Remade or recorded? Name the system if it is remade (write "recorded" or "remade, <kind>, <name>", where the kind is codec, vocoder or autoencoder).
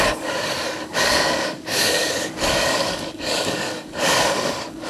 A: remade, codec, DAC